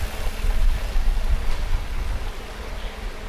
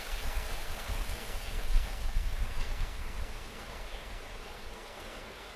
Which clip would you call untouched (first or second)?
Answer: first